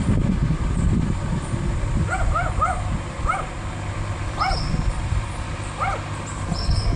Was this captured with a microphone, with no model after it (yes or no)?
no